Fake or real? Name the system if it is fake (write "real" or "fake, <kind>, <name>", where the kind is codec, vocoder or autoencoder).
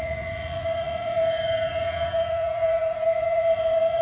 fake, vocoder, Vocos